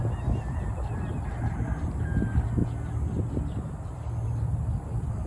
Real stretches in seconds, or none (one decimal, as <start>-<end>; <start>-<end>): 0.0-5.3